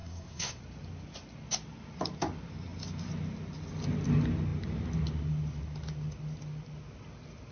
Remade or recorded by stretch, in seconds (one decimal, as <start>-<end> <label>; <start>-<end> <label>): 0.0-0.6 remade; 0.6-7.5 recorded